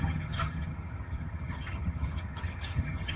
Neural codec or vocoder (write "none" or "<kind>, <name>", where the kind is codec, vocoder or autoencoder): vocoder, HiFi-GAN